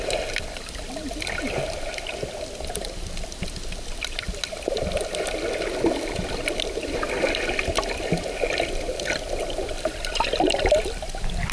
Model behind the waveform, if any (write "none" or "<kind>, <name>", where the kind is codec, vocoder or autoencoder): none